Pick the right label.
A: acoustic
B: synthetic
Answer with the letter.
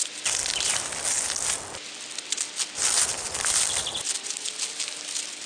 A